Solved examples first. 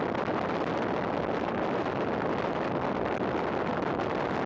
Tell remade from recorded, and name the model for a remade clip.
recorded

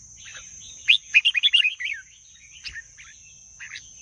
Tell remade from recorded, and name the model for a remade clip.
recorded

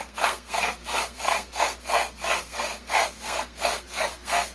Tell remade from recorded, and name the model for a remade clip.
remade, codec, SNAC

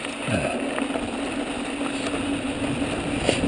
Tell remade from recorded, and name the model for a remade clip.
recorded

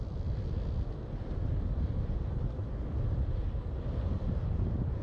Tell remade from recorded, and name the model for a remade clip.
recorded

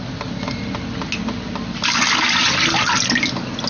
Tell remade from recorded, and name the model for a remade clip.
recorded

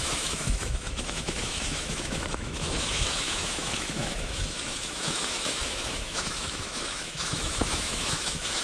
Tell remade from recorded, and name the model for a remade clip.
remade, autoencoder, DAC-VAE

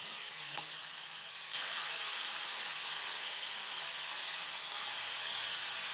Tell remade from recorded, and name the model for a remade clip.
remade, codec, SNAC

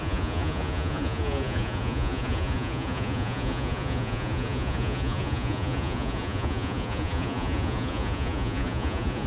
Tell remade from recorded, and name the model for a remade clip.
remade, vocoder, Vocos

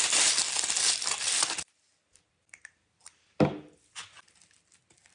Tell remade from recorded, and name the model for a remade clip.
recorded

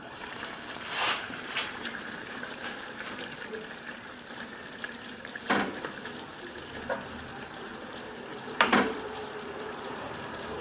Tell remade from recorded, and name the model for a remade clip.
remade, vocoder, BigVGAN v2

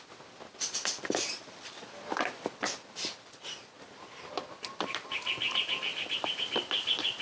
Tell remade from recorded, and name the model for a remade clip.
remade, vocoder, BigVGAN v2